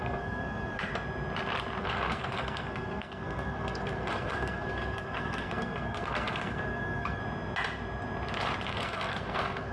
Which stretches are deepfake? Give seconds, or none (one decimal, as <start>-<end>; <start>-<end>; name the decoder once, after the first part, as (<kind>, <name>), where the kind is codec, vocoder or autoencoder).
0.0-0.9 (codec, SNAC); 1.8-7.2; 8.7-9.7